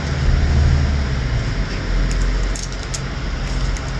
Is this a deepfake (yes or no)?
no